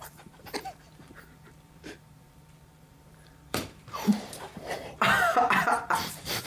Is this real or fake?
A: fake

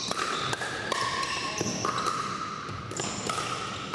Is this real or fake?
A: real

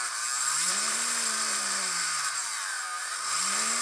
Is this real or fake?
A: fake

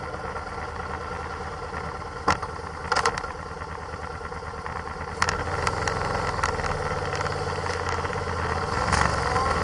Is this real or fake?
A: real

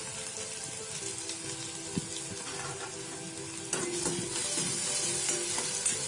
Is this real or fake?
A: real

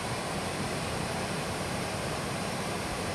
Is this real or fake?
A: fake